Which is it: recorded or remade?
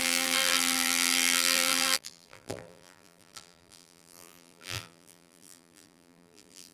remade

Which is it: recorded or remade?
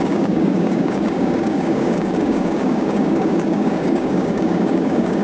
remade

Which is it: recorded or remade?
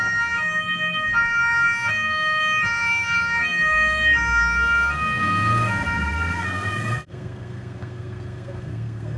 remade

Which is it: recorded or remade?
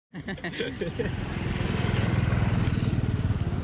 recorded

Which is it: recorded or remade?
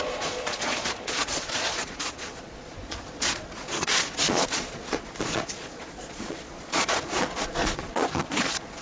remade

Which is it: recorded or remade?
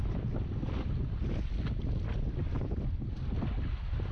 recorded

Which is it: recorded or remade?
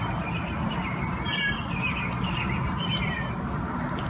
recorded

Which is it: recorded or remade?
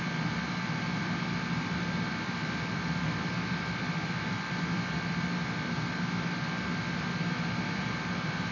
recorded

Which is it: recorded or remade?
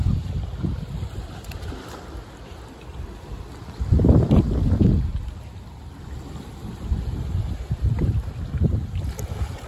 recorded